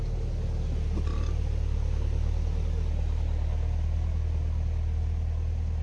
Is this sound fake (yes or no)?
no